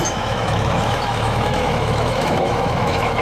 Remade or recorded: remade